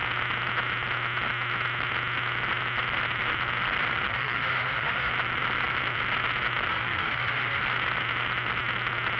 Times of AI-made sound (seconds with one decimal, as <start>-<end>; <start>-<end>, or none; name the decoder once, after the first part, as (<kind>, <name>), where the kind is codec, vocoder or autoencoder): 4.1-5.1 (autoencoder, DAC-VAE); 6.7-7.6